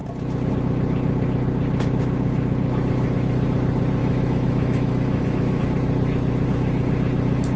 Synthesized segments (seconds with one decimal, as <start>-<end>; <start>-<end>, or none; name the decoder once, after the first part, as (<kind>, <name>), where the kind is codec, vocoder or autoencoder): 4.0-5.6 (autoencoder, DAC-VAE)

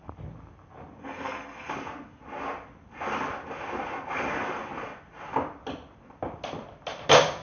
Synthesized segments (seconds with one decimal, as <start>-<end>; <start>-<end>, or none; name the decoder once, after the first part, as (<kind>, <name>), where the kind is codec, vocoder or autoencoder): 1.0-1.7 (codec, SNAC)

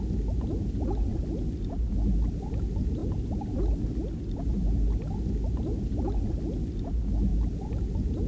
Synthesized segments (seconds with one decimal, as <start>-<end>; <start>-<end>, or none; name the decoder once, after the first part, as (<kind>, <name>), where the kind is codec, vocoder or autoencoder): 1.1-1.9 (vocoder, BigVGAN v2); 3.0-4.2; 5.7-6.2